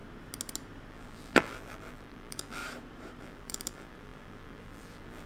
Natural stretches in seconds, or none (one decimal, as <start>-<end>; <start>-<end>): 0.0-0.9; 2.6-3.2